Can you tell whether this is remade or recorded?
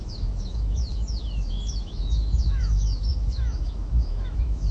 remade